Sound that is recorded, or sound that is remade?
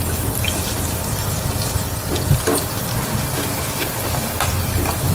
recorded